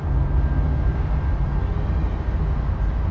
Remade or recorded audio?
recorded